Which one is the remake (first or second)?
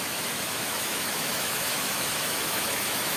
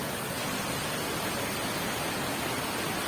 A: first